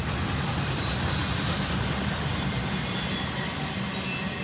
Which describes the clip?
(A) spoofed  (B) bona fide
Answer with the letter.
B